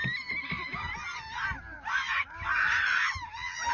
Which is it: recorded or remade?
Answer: recorded